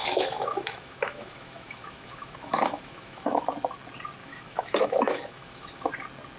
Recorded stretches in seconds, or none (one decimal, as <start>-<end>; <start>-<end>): 3.4-4.2; 5.9-6.4